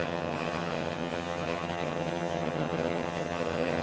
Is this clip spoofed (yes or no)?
yes